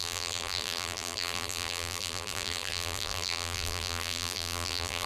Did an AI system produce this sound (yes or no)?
yes